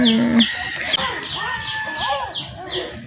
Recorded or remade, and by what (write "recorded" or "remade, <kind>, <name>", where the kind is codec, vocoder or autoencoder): recorded